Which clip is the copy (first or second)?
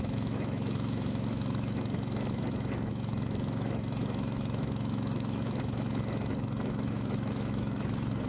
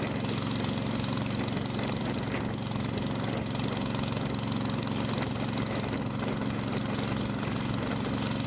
first